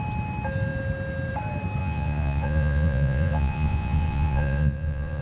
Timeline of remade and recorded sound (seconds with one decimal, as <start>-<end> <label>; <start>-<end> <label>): 0.0-1.8 recorded; 1.8-5.2 remade